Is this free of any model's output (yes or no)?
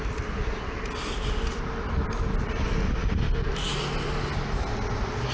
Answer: yes